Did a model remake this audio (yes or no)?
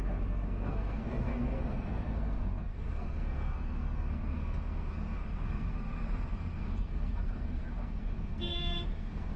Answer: yes